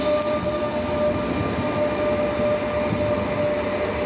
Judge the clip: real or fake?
real